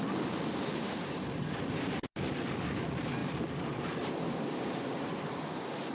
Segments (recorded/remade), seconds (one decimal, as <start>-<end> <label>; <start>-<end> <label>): 0.0-5.9 recorded